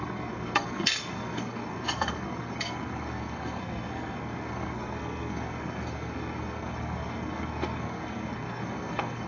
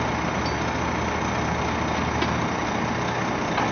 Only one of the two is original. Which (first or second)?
second